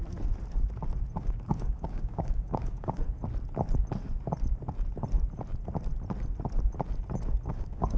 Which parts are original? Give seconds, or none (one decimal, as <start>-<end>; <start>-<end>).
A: 0.0-1.2; 3.0-7.5